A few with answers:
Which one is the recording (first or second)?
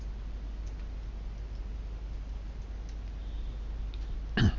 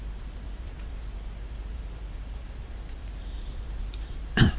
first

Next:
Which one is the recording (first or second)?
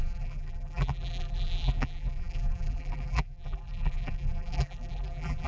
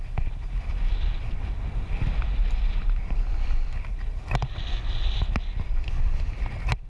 second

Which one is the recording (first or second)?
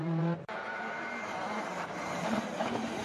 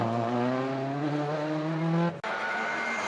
second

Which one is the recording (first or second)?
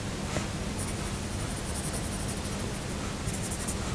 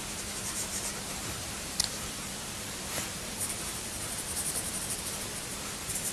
first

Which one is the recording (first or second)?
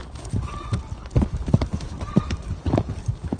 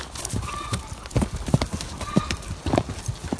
second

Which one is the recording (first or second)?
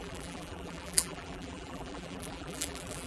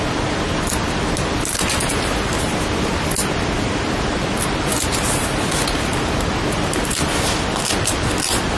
second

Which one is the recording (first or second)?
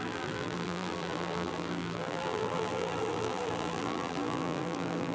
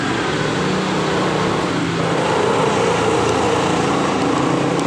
second